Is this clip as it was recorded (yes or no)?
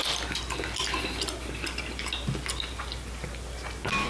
yes